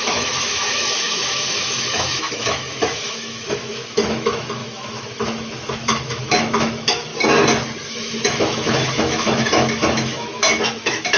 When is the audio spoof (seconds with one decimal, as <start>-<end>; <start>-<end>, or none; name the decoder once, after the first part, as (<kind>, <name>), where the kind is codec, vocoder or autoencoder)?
0.0-7.1 (autoencoder, DAC-VAE); 7.9-11.2